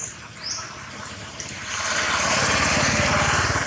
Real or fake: fake